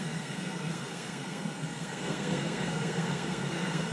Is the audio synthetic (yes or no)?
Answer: yes